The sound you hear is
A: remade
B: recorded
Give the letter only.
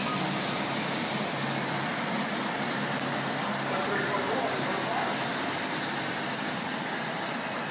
B